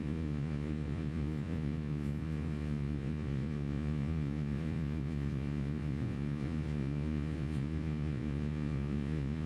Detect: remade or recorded remade